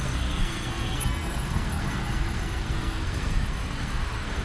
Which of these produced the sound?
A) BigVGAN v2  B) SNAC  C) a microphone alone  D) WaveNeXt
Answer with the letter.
B